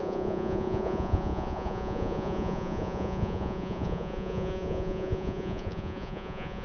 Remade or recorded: remade